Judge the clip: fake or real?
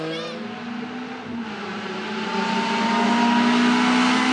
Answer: real